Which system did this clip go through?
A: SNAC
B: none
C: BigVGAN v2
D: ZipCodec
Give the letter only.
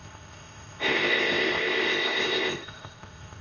D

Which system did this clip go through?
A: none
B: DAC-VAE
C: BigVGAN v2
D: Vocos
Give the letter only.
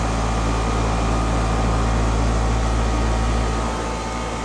A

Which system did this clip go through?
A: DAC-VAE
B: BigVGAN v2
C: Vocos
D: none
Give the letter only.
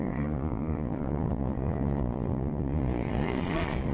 C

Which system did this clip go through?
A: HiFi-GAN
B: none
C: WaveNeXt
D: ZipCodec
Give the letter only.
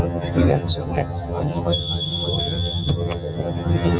A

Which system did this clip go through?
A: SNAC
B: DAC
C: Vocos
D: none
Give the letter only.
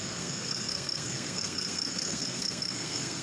A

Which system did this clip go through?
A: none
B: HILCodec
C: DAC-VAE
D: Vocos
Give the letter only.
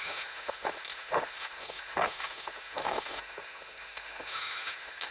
C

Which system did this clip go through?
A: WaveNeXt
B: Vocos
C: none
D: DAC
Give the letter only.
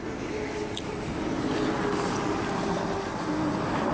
C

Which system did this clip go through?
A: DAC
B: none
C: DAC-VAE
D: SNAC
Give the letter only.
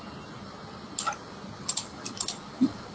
B